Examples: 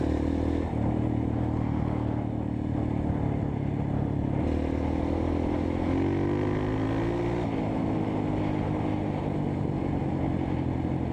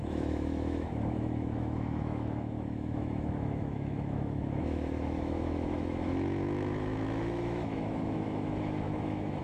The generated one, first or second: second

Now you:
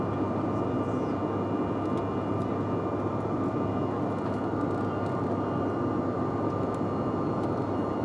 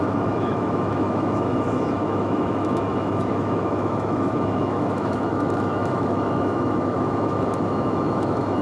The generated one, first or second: second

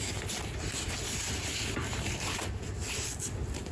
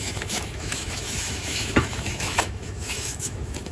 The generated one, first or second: second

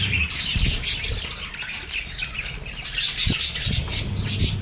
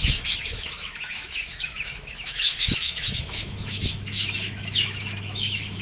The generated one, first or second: second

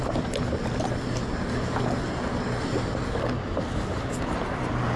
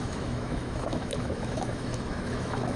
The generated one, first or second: second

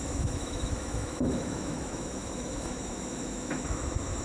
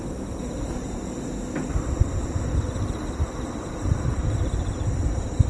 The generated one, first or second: first